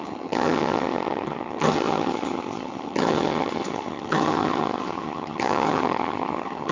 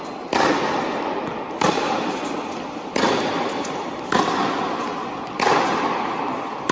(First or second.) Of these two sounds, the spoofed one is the first